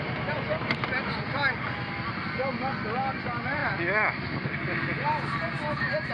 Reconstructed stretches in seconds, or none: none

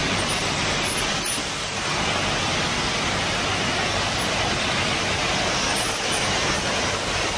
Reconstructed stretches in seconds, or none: none

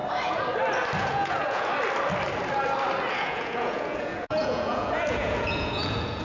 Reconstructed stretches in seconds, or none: 1.0-1.7 (vocoder, Vocos); 3.1-6.2

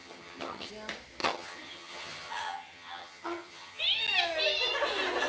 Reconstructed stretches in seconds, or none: 0.0-0.7 (vocoder, HiFi-GAN); 1.2-3.8